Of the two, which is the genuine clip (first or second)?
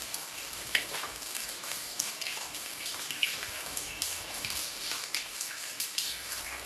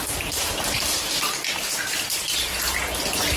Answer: second